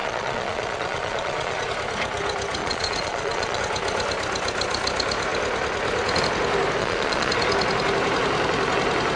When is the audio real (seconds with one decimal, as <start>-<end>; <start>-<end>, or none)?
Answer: 1.7-2.6; 3.6-6.8; 7.3-9.2